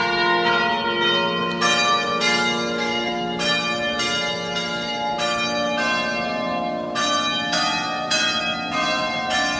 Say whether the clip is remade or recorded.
recorded